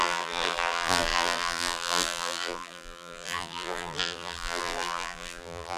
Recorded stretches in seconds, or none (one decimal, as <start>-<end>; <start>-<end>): none